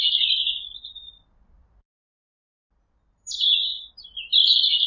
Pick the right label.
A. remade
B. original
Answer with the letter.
B